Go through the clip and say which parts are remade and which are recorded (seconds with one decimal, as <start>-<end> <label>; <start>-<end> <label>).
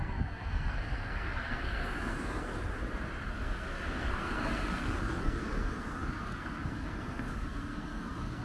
0.0-2.5 remade; 2.5-3.3 recorded; 3.3-8.4 remade